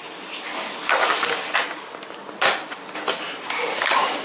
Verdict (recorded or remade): recorded